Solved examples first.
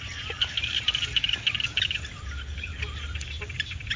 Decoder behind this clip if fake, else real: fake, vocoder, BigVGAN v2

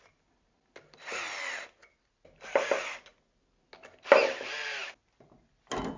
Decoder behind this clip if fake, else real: real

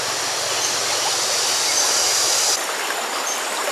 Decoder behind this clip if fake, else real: real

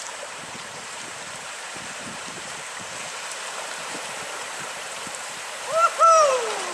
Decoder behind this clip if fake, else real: fake, vocoder, BigVGAN v2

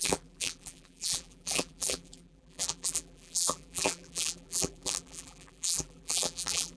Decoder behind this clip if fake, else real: fake, vocoder, BigVGAN v2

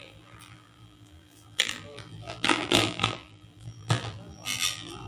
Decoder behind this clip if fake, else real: fake, vocoder, BigVGAN v2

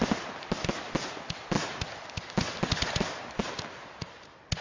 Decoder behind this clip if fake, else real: real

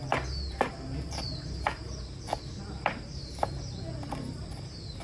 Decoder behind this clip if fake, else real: fake, vocoder, BigVGAN v2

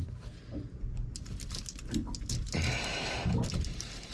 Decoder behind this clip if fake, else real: real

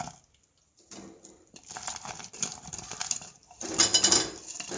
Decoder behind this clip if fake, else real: real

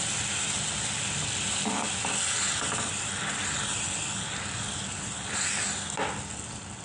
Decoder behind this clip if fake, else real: real